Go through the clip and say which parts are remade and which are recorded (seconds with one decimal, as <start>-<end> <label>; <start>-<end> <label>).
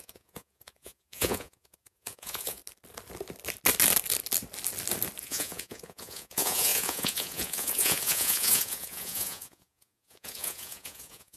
0.0-2.6 remade; 2.6-5.2 recorded; 5.2-11.4 remade